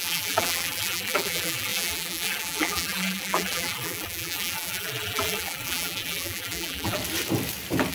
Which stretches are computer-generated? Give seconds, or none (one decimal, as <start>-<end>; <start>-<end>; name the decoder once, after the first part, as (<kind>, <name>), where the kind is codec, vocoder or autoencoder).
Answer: 0.0-7.0 (vocoder, BigVGAN v2)